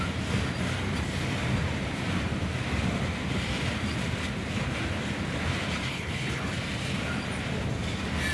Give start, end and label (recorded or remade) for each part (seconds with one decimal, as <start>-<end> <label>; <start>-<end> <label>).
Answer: 0.0-5.9 recorded; 5.9-6.5 remade; 6.5-8.3 recorded